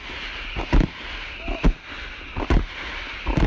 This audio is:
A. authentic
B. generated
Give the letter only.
A